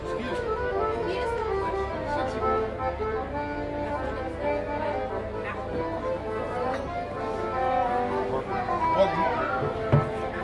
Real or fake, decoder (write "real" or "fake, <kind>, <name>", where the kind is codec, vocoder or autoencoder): real